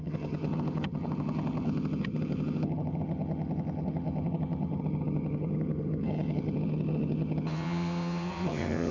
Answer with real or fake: fake